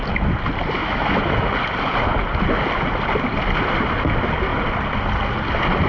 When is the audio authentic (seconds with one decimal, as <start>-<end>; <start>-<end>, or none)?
0.0-0.8; 1.5-5.9